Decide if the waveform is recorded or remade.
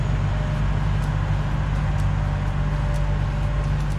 recorded